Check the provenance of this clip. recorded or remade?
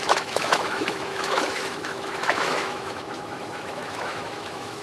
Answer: remade